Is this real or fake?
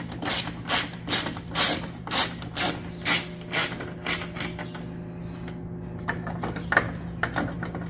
real